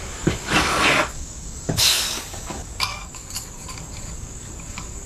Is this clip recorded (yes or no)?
no